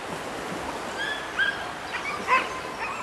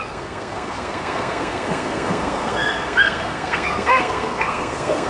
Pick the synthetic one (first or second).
second